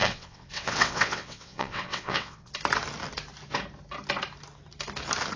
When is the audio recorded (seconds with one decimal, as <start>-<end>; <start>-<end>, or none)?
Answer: 2.5-5.4